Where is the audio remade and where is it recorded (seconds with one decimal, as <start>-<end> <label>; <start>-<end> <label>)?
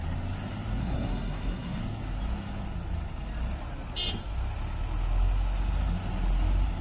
0.0-0.8 recorded; 0.8-1.8 remade; 1.8-6.8 recorded